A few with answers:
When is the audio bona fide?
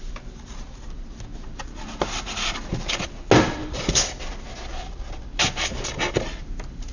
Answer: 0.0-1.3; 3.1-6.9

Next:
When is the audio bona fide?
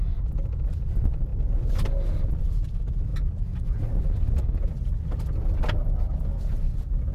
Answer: 0.0-7.1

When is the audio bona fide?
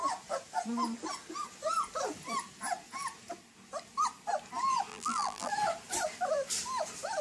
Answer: 0.0-4.9; 5.5-7.2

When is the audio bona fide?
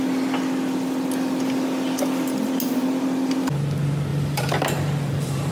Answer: 0.0-4.1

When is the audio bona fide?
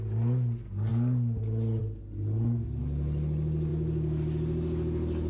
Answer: 0.0-5.3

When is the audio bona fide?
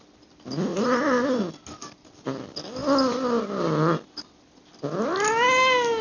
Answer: 0.0-0.7; 1.4-6.0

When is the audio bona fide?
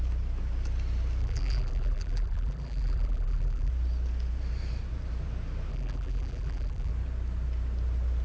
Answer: 0.0-1.2; 3.7-5.7; 6.9-8.2